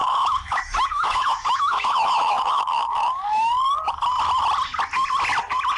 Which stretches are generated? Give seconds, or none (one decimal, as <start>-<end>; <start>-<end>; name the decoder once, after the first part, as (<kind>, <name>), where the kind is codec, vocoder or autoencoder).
0.0-3.5 (autoencoder, DAC-VAE)